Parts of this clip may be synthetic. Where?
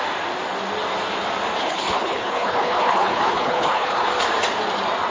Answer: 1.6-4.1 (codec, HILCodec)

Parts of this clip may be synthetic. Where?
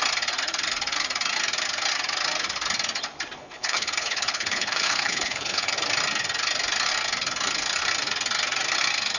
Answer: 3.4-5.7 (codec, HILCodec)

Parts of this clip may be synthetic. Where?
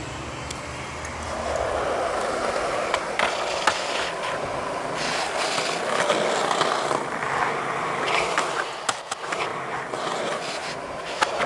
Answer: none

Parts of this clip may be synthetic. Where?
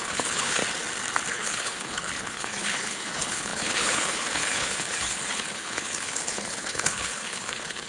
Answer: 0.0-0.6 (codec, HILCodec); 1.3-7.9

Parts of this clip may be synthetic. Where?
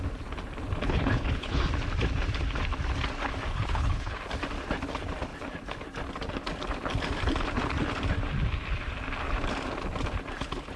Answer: 0.8-1.6 (codec, HILCodec); 3.5-4.2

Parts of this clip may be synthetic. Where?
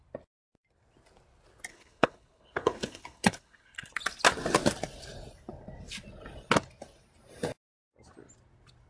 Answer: 1.7-3.9 (codec, HILCodec)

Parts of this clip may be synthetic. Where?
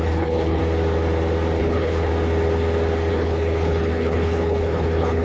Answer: 0.0-0.6 (codec, HILCodec); 1.6-2.1; 3.1-5.2